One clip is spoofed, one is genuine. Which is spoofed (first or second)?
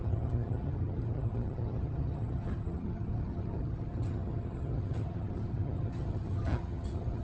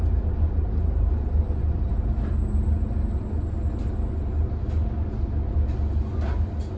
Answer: first